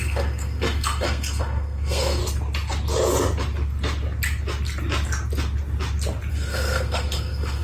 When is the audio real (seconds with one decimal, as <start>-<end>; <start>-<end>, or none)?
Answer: 2.2-6.3